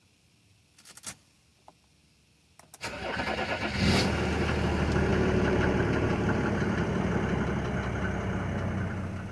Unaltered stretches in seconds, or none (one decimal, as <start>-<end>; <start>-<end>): 0.0-5.1; 7.1-9.3